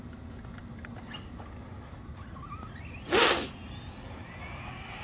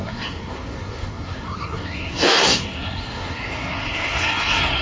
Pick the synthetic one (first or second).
second